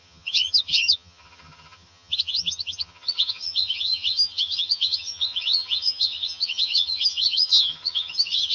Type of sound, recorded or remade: remade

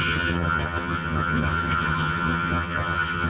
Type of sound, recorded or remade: remade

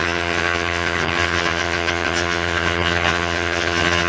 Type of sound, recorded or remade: remade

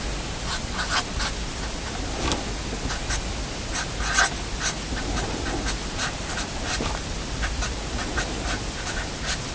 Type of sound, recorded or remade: recorded